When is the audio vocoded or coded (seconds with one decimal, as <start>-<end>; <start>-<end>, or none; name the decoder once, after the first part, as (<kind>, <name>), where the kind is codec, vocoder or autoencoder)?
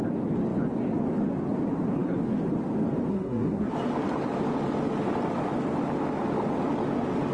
3.1-3.7 (codec, SNAC)